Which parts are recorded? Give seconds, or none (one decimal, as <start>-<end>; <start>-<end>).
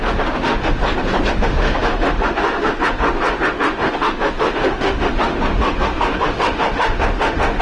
0.8-1.3